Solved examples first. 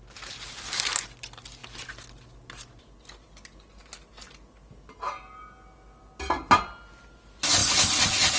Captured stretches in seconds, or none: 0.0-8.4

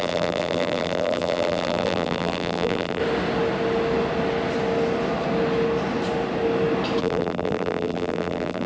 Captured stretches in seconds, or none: 3.0-7.0

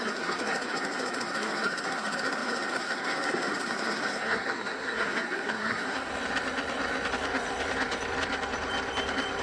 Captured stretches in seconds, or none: 6.1-9.4